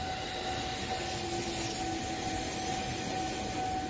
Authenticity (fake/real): real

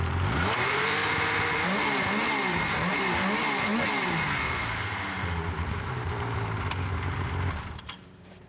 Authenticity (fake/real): fake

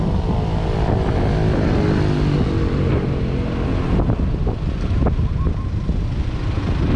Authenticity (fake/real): real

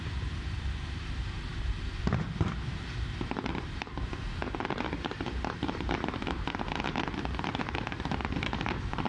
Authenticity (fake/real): fake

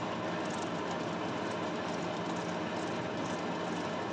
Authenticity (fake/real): real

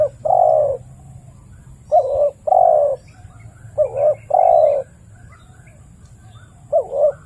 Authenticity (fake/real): fake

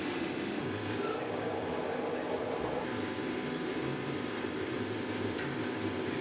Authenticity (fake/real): real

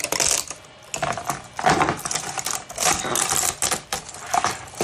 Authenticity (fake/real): real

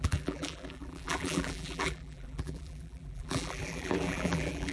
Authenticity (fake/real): fake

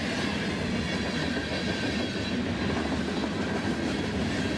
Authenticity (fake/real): real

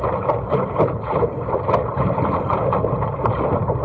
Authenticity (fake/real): fake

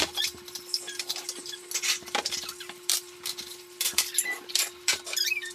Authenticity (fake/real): fake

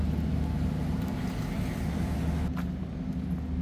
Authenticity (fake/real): real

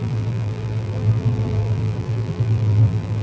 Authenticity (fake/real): fake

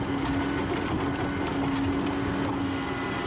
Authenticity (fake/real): real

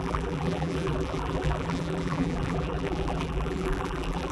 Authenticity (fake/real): fake